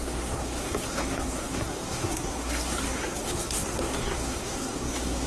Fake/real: fake